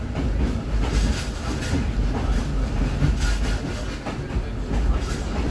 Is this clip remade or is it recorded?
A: recorded